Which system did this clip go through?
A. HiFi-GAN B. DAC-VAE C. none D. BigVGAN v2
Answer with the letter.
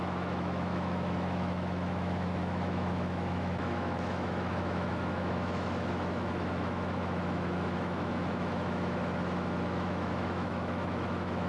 B